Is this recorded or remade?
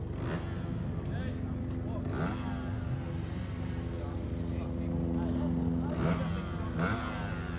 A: recorded